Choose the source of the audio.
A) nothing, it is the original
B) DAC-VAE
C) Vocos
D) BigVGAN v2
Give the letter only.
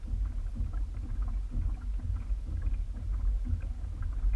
A